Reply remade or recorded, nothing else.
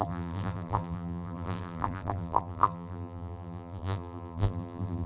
remade